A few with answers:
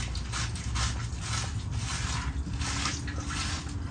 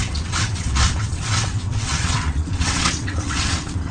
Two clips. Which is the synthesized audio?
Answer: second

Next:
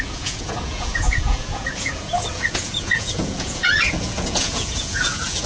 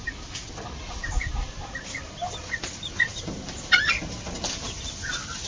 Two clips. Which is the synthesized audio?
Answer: first